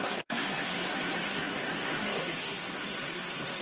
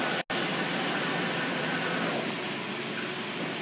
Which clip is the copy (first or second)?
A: first